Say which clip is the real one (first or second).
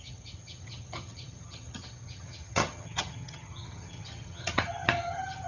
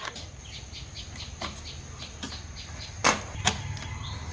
second